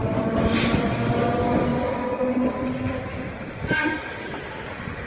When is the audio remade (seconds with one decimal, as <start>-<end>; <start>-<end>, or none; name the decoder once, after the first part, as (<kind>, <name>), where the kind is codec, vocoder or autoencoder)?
1.7-4.5 (vocoder, BigVGAN v2)